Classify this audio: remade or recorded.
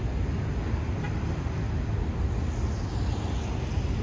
recorded